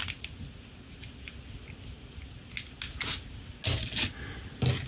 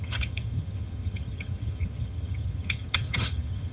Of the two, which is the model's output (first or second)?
second